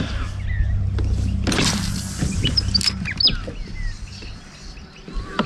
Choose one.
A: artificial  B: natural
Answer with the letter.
B